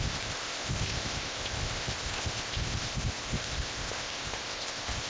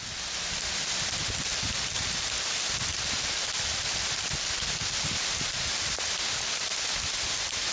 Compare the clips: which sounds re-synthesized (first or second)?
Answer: first